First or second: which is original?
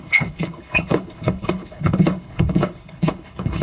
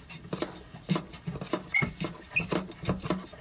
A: second